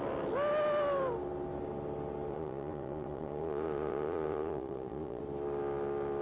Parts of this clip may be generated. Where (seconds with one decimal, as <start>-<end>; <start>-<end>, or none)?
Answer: 2.3-5.2